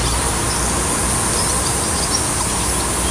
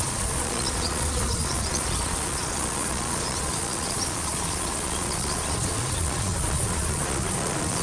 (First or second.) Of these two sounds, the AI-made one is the second